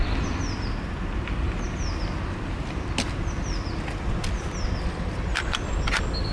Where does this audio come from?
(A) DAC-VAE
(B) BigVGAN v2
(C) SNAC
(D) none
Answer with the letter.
D